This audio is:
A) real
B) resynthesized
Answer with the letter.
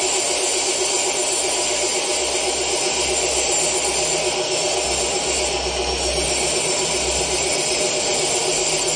A